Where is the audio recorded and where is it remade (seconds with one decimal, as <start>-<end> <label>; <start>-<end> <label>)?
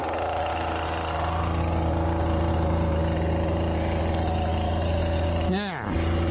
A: 0.0-6.3 recorded